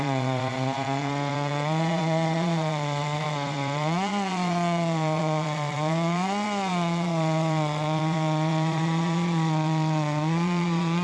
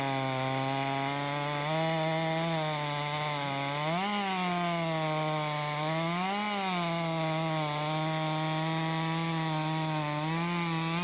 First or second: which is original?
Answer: second